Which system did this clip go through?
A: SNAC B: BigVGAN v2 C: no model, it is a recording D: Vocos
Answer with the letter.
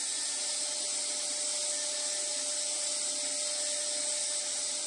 C